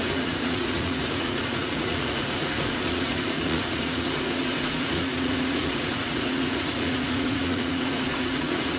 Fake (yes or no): yes